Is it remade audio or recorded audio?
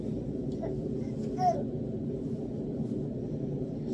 recorded